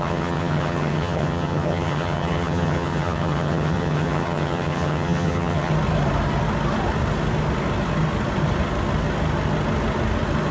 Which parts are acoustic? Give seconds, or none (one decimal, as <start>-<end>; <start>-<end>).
5.7-10.5

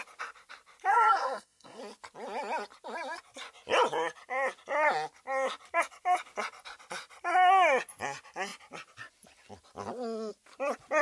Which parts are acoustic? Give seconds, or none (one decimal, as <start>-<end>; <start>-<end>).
0.0-0.9; 1.8-11.0

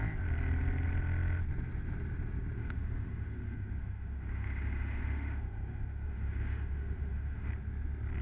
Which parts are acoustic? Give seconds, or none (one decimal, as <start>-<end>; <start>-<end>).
0.0-2.6; 7.5-8.2

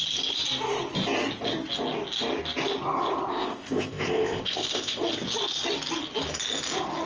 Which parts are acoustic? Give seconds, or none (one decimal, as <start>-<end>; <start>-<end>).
0.0-3.3; 5.0-7.1

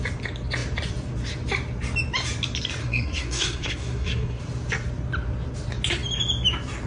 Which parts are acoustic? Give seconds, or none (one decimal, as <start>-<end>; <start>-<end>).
0.0-2.8; 4.4-6.9

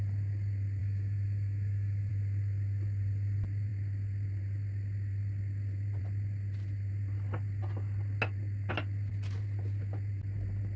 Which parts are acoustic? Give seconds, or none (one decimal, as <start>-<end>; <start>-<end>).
0.0-0.8; 2.1-10.8